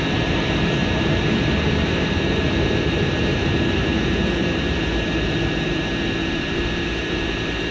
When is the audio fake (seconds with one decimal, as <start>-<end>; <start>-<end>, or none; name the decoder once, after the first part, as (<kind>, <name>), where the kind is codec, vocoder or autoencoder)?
0.0-7.7 (vocoder, BigVGAN v2)